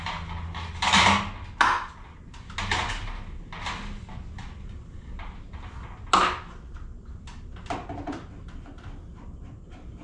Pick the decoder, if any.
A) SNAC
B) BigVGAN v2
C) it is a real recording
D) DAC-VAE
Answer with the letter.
C